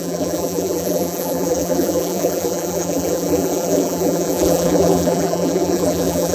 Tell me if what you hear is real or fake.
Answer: fake